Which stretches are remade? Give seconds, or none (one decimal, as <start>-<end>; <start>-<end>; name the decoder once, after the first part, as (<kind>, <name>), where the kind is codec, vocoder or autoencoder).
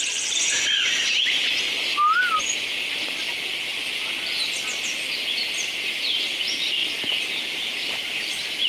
none